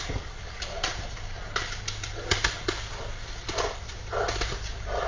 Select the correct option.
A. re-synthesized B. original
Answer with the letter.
B